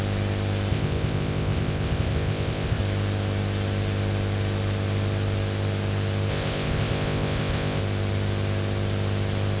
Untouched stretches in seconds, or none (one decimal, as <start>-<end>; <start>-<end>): 0.0-0.7; 2.8-6.3; 7.8-9.6